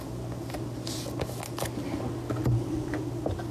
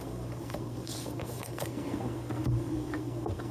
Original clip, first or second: first